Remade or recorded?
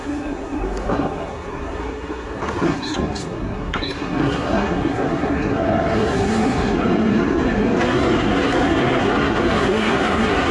remade